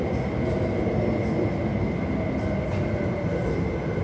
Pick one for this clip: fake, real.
real